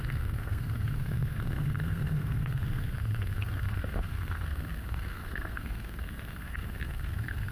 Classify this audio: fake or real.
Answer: fake